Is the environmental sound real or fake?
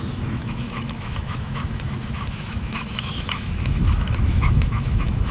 fake